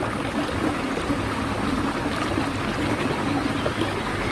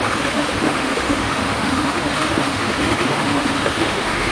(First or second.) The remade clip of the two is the second